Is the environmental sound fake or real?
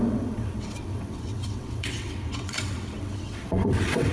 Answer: fake